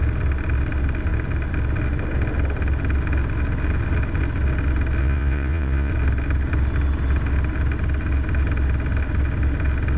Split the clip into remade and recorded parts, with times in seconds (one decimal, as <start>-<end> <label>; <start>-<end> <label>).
0.0-5.0 recorded; 5.0-5.9 remade; 5.9-10.0 recorded